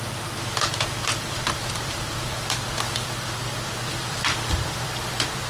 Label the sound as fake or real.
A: fake